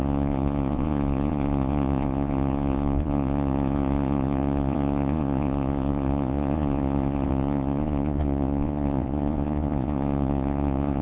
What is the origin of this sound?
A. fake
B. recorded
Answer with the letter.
A